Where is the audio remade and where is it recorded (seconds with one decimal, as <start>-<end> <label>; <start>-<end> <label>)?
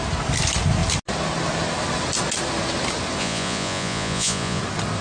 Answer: 0.0-3.2 recorded; 3.2-4.6 remade; 4.6-5.0 recorded